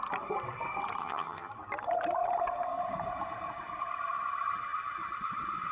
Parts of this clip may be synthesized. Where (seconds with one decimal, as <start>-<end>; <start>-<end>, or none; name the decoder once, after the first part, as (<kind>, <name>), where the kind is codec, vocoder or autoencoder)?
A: 1.0-1.5 (vocoder, HiFi-GAN)